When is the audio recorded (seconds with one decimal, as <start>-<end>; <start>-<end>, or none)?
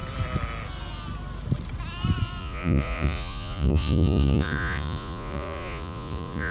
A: 0.0-2.4